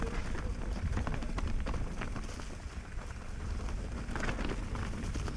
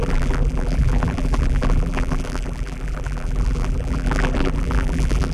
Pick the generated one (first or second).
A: second